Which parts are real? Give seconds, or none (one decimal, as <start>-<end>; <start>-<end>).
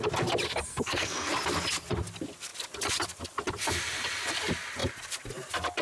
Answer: 0.0-0.7; 1.3-5.8